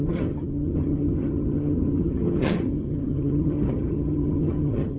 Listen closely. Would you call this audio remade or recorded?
remade